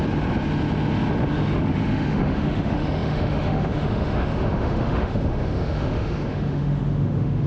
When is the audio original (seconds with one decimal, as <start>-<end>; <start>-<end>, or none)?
0.0-1.3